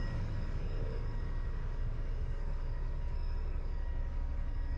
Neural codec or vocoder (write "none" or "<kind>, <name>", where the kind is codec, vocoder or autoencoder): codec, DAC